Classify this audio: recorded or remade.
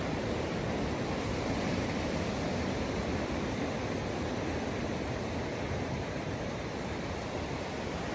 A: remade